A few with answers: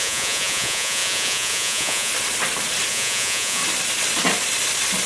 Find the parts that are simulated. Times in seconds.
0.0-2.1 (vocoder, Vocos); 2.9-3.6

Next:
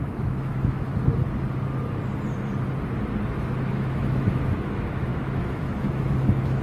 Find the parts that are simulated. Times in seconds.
0.0-0.9 (autoencoder, DAC-VAE); 3.7-6.6

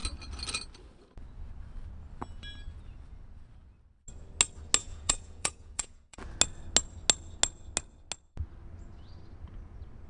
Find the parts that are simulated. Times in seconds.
4.8-6.2 (vocoder, Vocos)

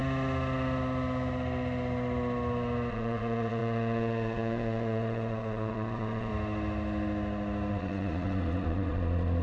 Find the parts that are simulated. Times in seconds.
2.9-6.3 (vocoder, Vocos); 7.7-9.4